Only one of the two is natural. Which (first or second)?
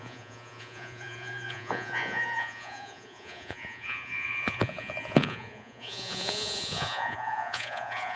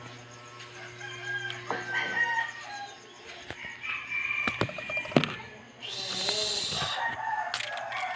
second